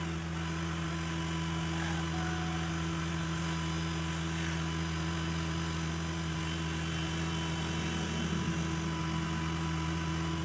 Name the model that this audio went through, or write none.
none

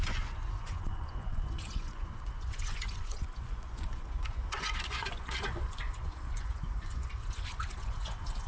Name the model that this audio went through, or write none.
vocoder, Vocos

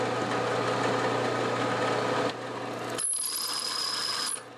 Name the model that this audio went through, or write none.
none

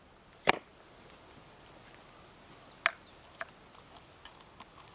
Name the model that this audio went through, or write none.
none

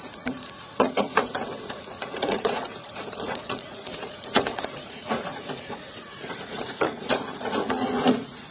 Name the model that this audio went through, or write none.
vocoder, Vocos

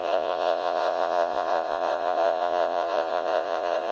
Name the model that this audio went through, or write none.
vocoder, Vocos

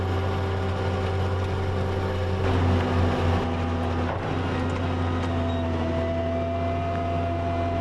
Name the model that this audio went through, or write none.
none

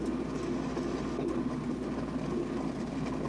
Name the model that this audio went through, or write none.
none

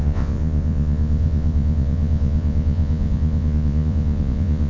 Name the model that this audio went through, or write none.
vocoder, Vocos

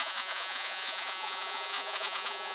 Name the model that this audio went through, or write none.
vocoder, Vocos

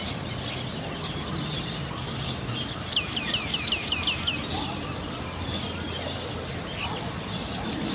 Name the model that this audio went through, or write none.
none